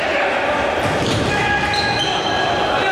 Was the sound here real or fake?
real